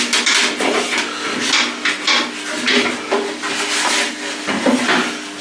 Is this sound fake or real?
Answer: real